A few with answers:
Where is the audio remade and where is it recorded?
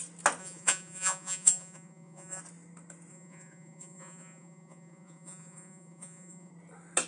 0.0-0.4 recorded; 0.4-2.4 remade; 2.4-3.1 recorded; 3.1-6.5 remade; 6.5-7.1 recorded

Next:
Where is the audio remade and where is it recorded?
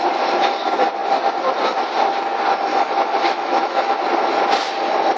0.0-2.7 recorded; 2.7-4.0 remade; 4.0-5.2 recorded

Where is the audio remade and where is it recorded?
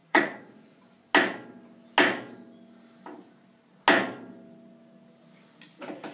0.0-0.8 remade; 0.8-6.1 recorded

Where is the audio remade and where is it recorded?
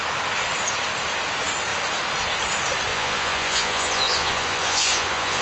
0.0-2.9 recorded; 2.9-5.4 remade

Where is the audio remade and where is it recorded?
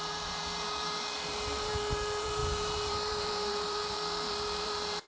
0.0-5.1 remade